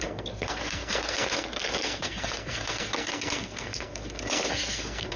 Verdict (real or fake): fake